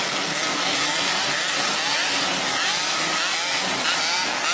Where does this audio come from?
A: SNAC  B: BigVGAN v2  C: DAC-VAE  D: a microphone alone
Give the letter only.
D